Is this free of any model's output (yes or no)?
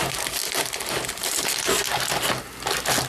yes